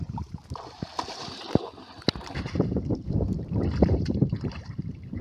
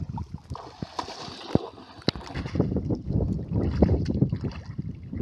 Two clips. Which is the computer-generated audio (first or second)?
first